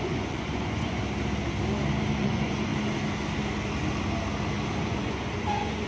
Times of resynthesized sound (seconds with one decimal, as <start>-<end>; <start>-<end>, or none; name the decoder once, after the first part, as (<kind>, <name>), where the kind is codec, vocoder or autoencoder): 0.0-1.0 (vocoder, Vocos); 2.2-2.7; 4.7-5.9